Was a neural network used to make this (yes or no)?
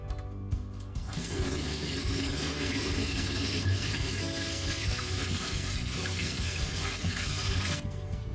yes